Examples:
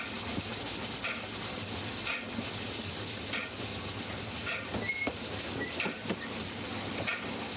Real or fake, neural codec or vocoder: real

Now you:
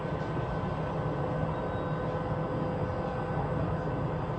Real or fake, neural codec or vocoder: real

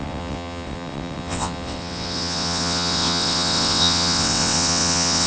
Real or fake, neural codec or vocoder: fake, vocoder, WaveNeXt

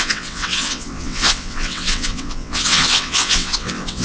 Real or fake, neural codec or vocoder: fake, vocoder, WaveNeXt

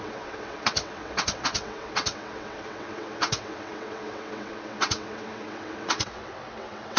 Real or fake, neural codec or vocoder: fake, vocoder, WaveNeXt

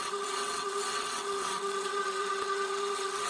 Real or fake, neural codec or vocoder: fake, vocoder, WaveNeXt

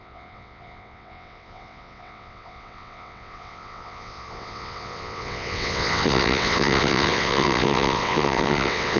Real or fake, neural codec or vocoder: fake, vocoder, WaveNeXt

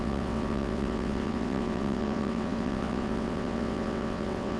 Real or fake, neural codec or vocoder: fake, vocoder, WaveNeXt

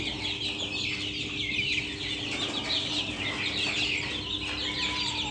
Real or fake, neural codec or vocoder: real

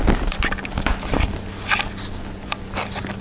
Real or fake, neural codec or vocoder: real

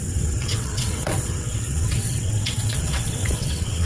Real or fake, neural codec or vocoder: fake, vocoder, WaveNeXt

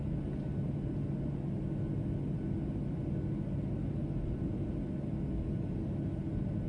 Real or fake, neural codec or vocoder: real